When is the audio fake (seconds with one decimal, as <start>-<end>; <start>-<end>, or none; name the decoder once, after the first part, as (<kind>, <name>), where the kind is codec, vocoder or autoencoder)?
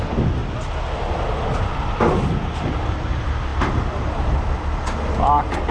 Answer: none